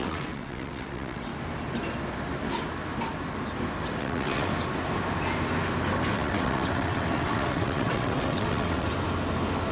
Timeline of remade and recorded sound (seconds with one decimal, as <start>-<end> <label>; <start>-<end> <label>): 0.0-1.3 remade; 1.3-4.0 recorded; 4.0-4.5 remade; 4.5-6.1 recorded; 6.1-8.9 remade; 8.9-9.7 recorded

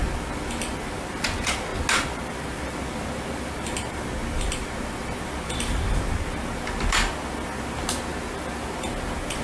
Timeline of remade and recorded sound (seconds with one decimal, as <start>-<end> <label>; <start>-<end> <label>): 0.0-9.4 recorded

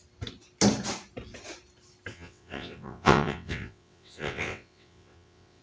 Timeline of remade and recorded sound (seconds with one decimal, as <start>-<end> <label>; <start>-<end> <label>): 0.0-2.1 recorded; 2.1-5.6 remade

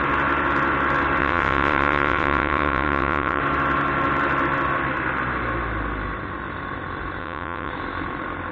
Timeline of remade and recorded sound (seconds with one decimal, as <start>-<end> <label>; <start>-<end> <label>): 0.0-1.2 recorded; 1.2-3.4 remade; 3.4-7.2 recorded; 7.2-7.7 remade; 7.7-8.5 recorded

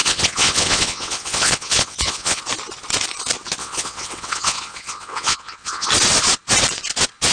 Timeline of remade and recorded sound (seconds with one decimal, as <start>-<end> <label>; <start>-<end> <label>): 0.0-2.4 remade; 2.4-3.6 recorded; 3.6-5.9 remade; 5.9-7.3 recorded

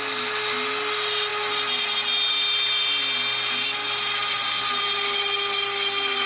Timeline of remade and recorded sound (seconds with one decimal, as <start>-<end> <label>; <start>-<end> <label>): 0.0-6.3 recorded

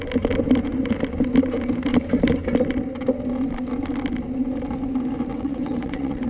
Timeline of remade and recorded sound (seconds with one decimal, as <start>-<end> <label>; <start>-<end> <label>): 0.0-5.3 recorded; 5.3-6.3 remade

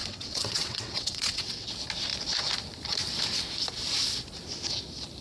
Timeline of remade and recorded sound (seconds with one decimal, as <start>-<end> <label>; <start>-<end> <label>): 0.0-1.7 remade; 1.7-5.2 recorded